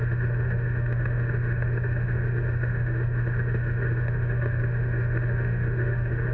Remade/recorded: remade